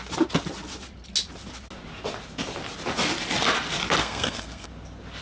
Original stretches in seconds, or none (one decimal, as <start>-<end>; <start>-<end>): 0.0-4.0; 4.7-5.2